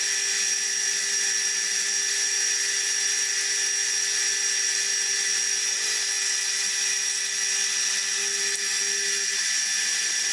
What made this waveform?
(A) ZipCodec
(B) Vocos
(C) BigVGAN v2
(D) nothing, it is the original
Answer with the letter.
D